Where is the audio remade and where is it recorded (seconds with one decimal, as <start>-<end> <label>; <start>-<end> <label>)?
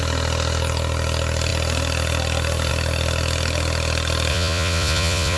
0.0-4.3 recorded; 4.3-5.4 remade